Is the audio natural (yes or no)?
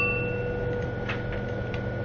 yes